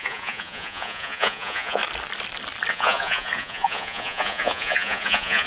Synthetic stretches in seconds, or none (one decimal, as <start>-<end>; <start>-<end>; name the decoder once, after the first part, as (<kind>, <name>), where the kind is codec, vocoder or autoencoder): 0.0-1.8 (vocoder, Vocos); 2.7-5.5